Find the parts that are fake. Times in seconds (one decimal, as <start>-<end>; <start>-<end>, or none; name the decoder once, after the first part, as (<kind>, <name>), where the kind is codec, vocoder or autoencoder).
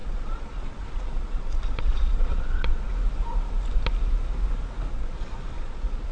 0.0-2.9 (vocoder, Vocos); 4.9-6.1